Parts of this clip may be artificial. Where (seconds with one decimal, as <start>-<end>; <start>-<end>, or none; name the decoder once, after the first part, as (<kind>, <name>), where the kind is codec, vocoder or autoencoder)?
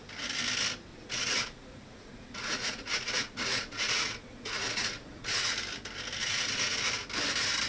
0.9-5.5 (vocoder, Vocos); 6.2-6.8